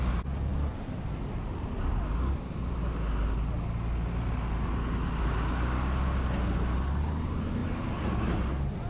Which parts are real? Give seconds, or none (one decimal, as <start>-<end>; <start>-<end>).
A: 0.0-8.9